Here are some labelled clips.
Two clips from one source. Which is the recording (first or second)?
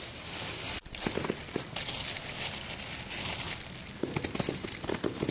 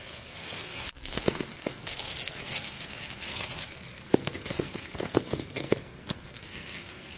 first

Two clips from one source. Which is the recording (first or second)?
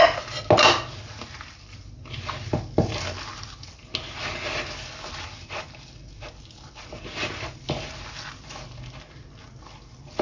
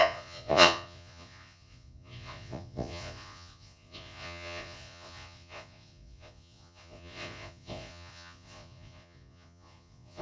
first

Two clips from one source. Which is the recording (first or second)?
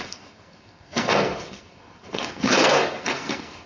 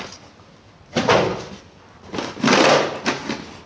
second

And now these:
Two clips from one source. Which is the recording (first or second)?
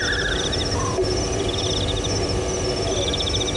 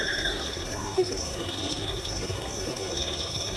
first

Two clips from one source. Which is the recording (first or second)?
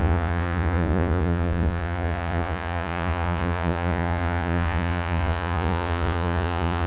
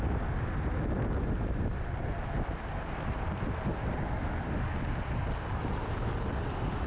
second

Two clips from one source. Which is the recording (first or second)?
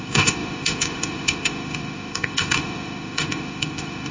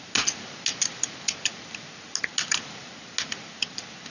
second